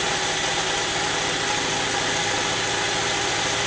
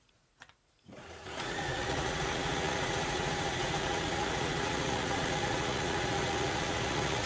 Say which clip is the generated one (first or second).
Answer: second